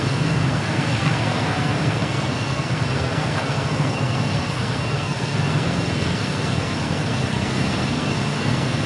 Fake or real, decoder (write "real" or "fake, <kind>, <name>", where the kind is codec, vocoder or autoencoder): fake, codec, SNAC